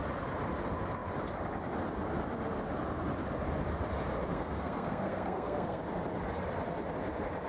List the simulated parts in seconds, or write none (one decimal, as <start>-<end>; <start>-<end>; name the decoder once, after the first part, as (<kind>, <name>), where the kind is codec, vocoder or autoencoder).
4.3-5.8 (codec, SNAC)